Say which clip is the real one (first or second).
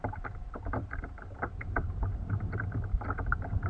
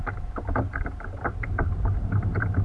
second